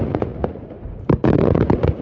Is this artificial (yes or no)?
yes